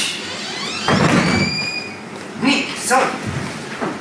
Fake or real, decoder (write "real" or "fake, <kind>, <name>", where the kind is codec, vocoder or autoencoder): real